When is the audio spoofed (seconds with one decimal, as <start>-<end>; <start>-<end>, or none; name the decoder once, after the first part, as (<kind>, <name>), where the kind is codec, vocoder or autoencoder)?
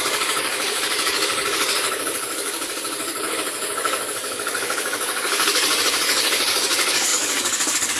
0.0-8.0 (codec, DAC)